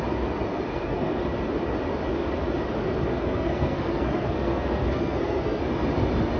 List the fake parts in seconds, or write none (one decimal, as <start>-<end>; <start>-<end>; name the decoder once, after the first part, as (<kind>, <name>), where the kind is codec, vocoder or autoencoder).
0.5-1.2 (codec, SNAC); 3.1-5.6